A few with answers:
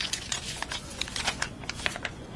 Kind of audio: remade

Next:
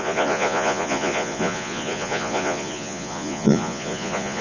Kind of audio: remade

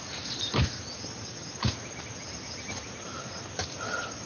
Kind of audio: recorded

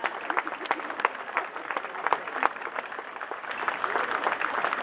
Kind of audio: recorded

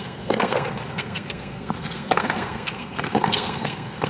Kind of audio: remade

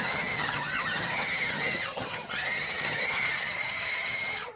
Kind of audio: remade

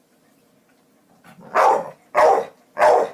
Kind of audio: recorded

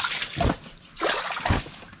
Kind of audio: recorded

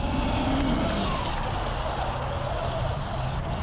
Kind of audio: recorded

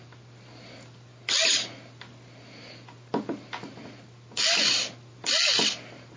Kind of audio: recorded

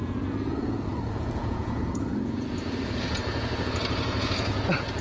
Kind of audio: remade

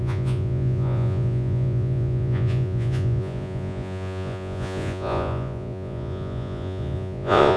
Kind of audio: remade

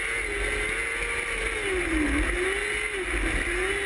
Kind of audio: recorded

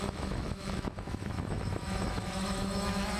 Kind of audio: remade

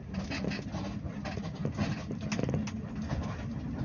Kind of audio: recorded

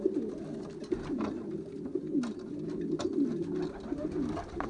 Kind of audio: recorded